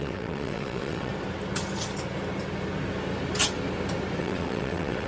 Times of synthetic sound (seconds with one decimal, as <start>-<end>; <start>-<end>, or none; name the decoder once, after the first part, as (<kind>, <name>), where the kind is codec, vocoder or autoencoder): 0.0-1.1 (vocoder, WaveNeXt); 4.2-5.1